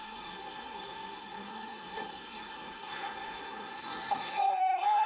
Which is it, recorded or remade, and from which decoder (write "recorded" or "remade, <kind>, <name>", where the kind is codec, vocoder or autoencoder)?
remade, codec, SNAC